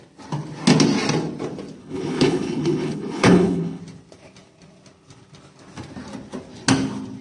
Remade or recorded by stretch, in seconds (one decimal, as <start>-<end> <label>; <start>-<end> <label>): 0.0-1.8 recorded; 1.8-3.8 remade; 3.8-7.2 recorded